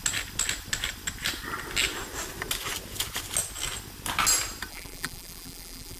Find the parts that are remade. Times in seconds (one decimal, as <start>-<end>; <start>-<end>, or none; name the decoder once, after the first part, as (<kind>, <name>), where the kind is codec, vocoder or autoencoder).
4.7-6.0 (vocoder, BigVGAN v2)